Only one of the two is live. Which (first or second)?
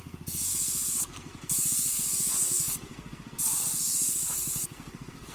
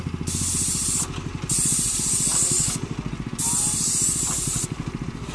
second